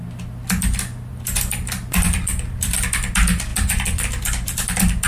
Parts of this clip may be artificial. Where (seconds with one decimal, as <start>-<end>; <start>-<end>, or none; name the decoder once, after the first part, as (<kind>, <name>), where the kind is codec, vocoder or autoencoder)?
1.1-3.1 (vocoder, BigVGAN v2); 3.5-5.1